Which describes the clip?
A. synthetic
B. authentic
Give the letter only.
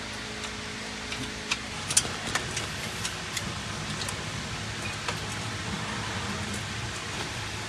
B